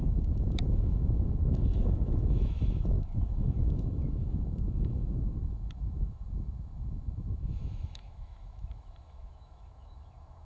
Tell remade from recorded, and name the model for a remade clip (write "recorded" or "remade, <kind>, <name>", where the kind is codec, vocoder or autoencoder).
remade, autoencoder, DAC-VAE